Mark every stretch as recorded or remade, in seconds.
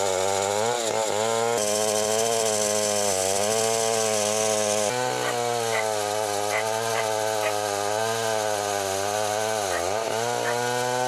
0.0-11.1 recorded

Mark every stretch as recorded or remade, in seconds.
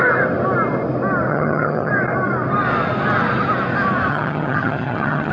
0.0-1.3 recorded; 1.3-1.9 remade; 1.9-4.1 recorded; 4.1-5.3 remade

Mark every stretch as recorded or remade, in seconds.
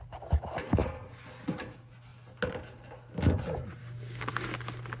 0.0-3.8 recorded; 3.8-4.3 remade; 4.3-5.0 recorded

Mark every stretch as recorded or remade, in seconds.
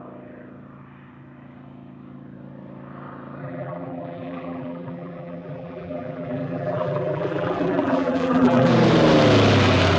0.0-3.4 recorded; 3.4-8.7 remade; 8.7-10.0 recorded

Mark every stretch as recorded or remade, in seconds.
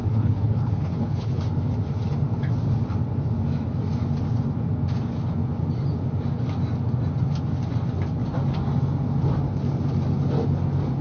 0.0-1.4 remade; 1.4-11.0 recorded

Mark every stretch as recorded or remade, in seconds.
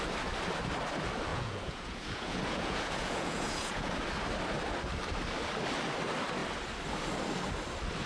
0.0-1.3 recorded; 1.3-3.9 remade; 3.9-8.1 recorded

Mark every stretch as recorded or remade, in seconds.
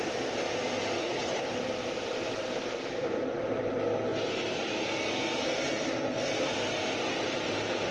0.0-1.0 recorded; 1.0-1.5 remade; 1.5-7.9 recorded